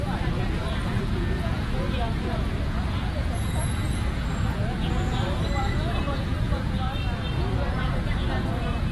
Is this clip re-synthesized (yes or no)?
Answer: yes